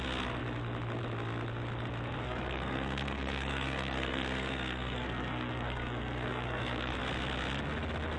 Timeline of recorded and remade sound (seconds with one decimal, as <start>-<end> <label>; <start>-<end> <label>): 0.0-2.2 recorded; 2.2-6.9 remade; 6.9-8.2 recorded